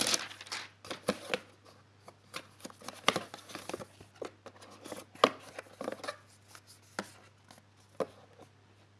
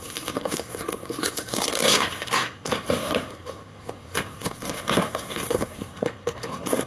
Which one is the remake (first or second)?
second